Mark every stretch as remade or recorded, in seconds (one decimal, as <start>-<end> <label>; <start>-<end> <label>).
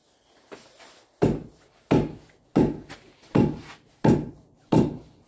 0.0-5.3 recorded